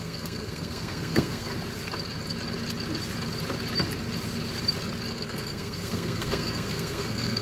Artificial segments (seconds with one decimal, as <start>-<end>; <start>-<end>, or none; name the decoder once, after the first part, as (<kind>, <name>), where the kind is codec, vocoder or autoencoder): 0.0-1.5 (codec, SNAC); 5.1-7.4